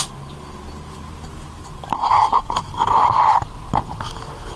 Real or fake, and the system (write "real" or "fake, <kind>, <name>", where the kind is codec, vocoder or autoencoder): real